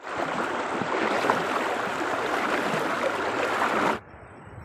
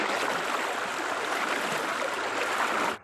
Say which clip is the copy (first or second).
first